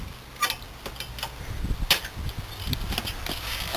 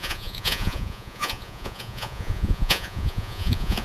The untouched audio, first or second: first